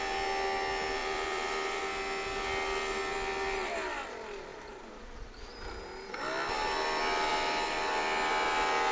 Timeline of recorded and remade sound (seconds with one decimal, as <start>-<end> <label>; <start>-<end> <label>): 0.0-1.0 recorded; 1.0-1.8 remade; 1.8-8.9 recorded